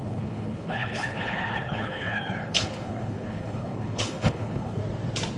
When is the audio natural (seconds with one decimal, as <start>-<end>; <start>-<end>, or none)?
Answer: 4.8-5.4